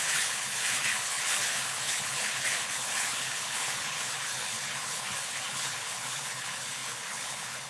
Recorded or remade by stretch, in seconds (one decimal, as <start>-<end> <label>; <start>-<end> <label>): 0.0-7.7 remade